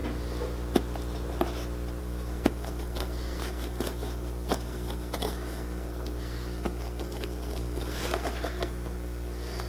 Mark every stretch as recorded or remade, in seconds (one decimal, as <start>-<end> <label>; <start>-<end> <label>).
0.0-2.0 recorded; 2.0-9.7 remade